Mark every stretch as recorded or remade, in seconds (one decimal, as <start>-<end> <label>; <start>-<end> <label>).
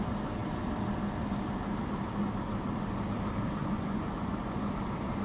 0.0-3.6 recorded; 3.6-4.7 remade; 4.7-5.2 recorded